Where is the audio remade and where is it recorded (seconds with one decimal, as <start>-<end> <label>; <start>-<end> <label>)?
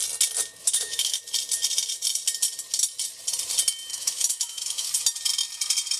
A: 0.0-0.6 recorded; 0.6-1.2 remade; 1.2-3.9 recorded; 3.9-4.9 remade; 4.9-6.0 recorded